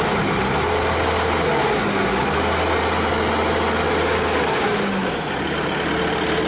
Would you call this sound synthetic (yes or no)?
no